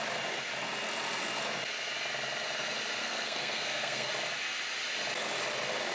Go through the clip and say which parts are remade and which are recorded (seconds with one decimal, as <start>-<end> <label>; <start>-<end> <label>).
0.0-3.0 recorded; 3.0-4.1 remade; 4.1-5.9 recorded